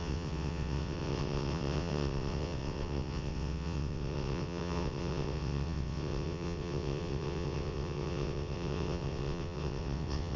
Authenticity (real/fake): fake